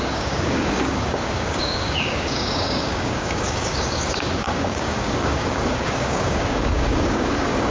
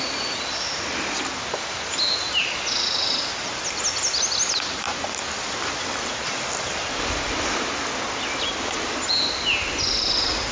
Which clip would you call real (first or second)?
second